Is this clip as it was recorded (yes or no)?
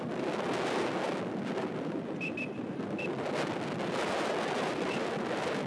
yes